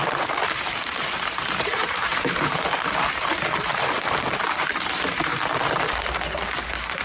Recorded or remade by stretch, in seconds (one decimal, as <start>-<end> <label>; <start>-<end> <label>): 0.0-5.3 remade; 5.3-7.0 recorded